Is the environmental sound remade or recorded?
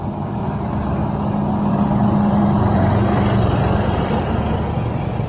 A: recorded